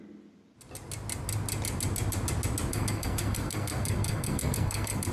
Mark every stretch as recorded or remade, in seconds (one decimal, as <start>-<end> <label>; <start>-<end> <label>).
0.0-2.7 recorded; 2.7-5.1 remade